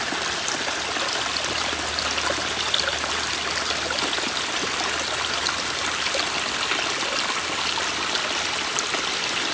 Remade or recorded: recorded